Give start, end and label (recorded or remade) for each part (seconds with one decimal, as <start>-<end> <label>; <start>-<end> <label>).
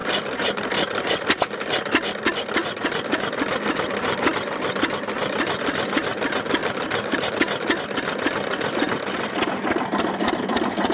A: 0.0-1.2 remade; 1.2-6.6 recorded; 6.6-7.3 remade; 7.3-10.9 recorded